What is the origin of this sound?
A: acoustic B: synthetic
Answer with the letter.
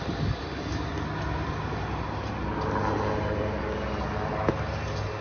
A